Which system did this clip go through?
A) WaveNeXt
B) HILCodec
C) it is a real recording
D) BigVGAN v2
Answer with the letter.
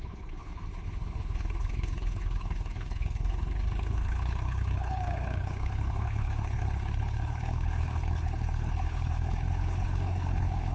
B